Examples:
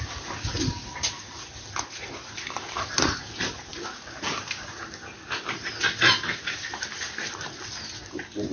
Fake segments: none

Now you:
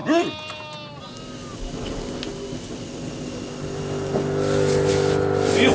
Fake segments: none

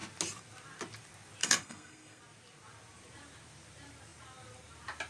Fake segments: 1.4-2.2 (codec, SNAC)

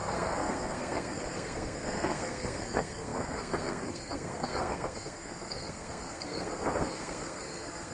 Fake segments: 0.0-7.9 (codec, SNAC)

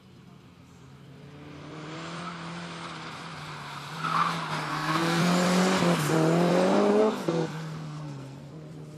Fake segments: 4.7-5.2 (codec, SNAC); 6.9-8.5